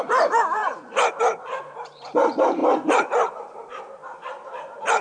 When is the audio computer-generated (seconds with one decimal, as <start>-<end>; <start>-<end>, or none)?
0.0-5.0